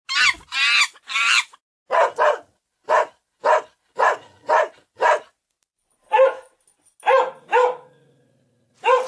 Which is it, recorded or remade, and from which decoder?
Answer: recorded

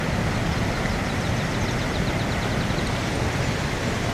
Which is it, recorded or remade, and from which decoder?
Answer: recorded